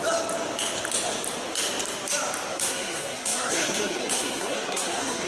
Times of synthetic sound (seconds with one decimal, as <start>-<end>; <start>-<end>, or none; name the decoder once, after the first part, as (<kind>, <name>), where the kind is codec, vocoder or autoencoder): 2.5-5.3 (codec, SNAC)